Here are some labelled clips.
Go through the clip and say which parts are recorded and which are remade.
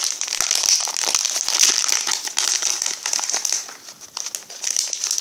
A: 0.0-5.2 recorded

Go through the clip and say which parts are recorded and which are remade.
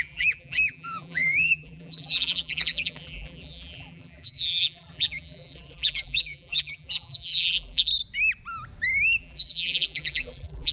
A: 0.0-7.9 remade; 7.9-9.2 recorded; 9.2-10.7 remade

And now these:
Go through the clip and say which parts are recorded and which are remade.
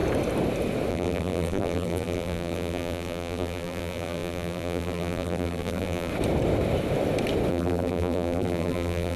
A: 0.0-0.9 recorded; 0.9-6.1 remade; 6.1-7.5 recorded; 7.5-9.2 remade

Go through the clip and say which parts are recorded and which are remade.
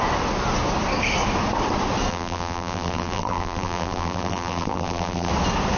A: 0.0-2.1 recorded; 2.1-5.3 remade; 5.3-5.8 recorded